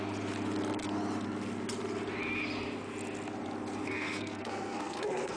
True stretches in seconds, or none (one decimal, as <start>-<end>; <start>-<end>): 0.0-3.8

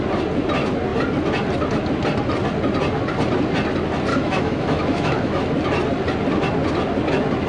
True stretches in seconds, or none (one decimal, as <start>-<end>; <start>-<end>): 0.0-4.1; 5.4-7.5

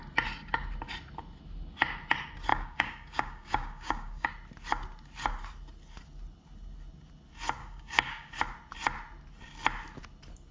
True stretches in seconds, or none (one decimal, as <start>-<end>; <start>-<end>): 0.0-2.5; 4.3-7.6; 8.4-10.5